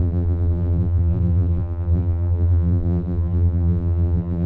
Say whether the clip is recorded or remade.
remade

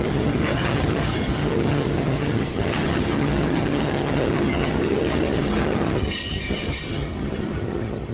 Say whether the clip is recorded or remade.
remade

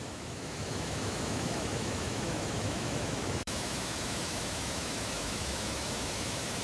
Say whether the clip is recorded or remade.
remade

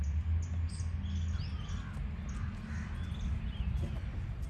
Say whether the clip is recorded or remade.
recorded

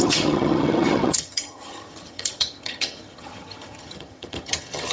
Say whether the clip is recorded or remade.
remade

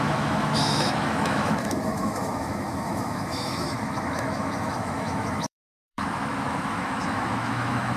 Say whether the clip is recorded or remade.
remade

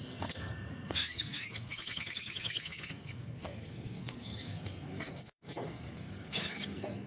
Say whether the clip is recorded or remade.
remade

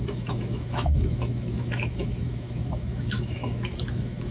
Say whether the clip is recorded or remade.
remade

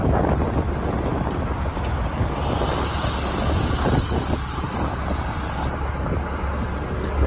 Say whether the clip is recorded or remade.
recorded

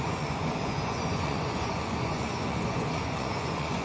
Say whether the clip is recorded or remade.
remade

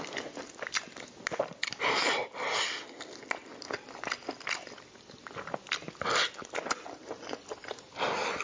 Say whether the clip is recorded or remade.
recorded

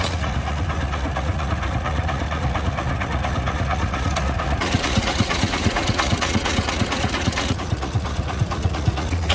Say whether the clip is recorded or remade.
remade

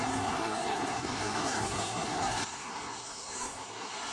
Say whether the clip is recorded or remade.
remade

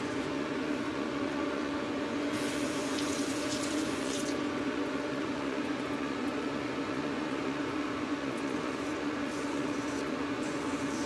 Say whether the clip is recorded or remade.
remade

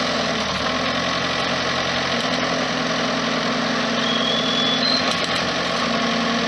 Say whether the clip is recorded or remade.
recorded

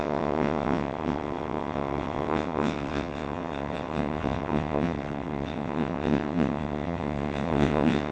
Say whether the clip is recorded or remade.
remade